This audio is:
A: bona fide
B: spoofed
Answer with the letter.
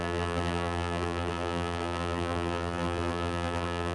B